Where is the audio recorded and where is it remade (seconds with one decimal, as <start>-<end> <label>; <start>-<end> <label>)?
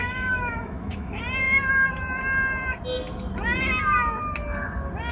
0.0-1.2 remade; 1.2-5.1 recorded